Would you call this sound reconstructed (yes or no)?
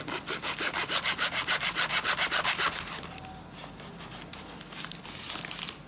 no